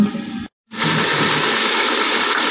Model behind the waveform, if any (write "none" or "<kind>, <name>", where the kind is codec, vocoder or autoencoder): none